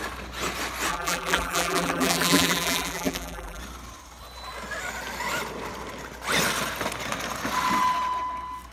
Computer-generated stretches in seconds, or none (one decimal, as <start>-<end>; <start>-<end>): 0.9-3.6